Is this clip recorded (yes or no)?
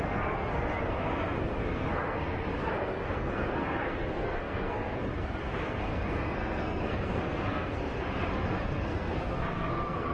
no